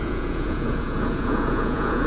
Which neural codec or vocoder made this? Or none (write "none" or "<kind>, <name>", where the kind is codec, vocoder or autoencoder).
vocoder, Vocos